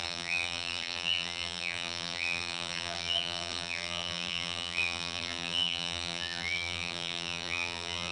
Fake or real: fake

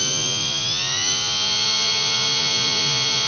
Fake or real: fake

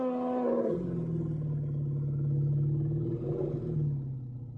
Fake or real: real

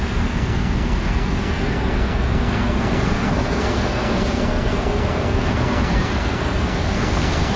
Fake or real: fake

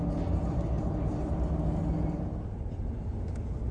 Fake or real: real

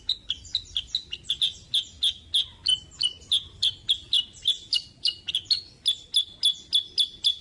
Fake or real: real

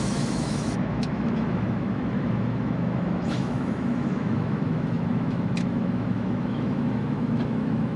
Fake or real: fake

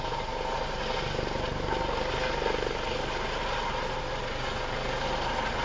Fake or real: real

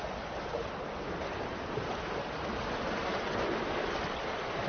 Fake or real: real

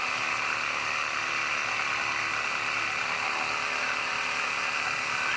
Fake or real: real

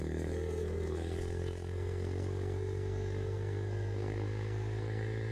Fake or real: fake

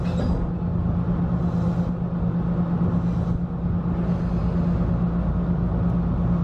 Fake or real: real